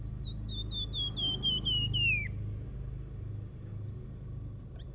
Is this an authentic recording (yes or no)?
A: yes